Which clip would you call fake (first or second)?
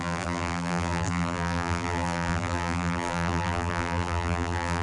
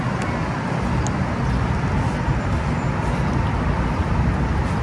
first